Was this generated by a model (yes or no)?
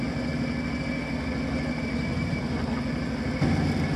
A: no